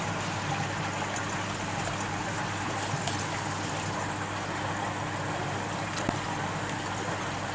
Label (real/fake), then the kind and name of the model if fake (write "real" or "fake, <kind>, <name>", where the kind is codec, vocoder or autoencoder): real